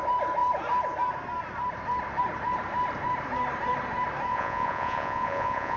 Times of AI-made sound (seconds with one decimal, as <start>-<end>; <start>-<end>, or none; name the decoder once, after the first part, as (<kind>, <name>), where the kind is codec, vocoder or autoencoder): 4.3-5.8 (vocoder, Vocos)